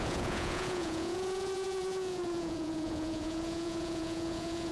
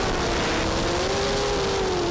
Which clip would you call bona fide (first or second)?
second